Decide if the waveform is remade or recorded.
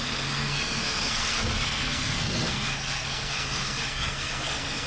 remade